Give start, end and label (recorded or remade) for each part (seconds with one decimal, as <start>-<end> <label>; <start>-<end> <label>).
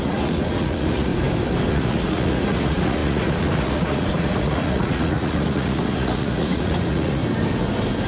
0.0-1.1 remade; 1.1-1.7 recorded; 1.7-7.2 remade; 7.2-8.1 recorded